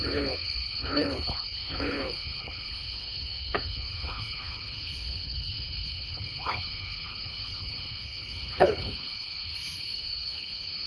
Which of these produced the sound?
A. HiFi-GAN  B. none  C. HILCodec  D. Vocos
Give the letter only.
C